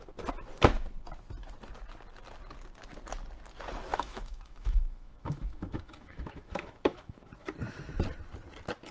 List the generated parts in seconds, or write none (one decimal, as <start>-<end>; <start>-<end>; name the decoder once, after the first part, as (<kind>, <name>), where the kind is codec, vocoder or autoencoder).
3.9-7.3 (autoencoder, DAC-VAE)